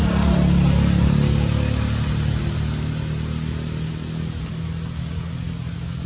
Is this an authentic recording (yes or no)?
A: yes